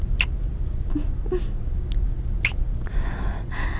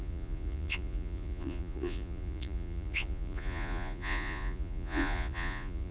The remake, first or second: second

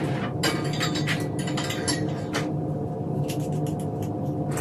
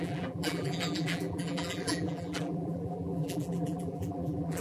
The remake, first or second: second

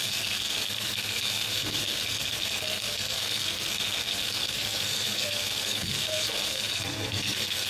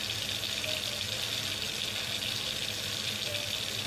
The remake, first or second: first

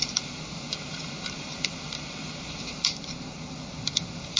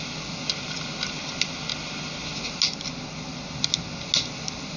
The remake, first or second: first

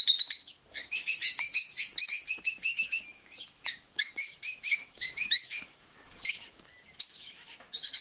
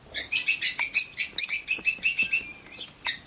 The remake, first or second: first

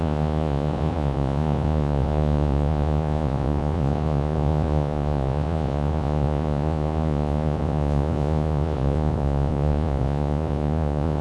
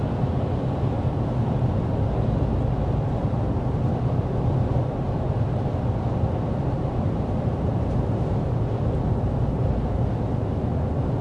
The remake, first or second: first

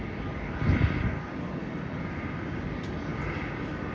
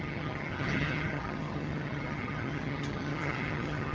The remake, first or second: second